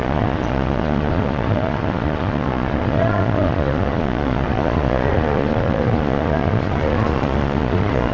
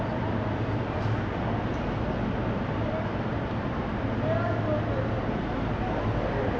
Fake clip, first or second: first